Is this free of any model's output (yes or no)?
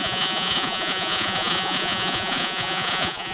no